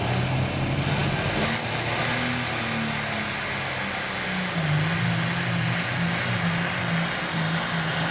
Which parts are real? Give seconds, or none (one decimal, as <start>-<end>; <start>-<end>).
0.0-8.1